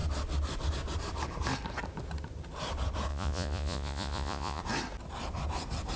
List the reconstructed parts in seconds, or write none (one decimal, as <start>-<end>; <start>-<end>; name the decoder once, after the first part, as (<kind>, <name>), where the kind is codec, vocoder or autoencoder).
3.1-4.6 (vocoder, Vocos)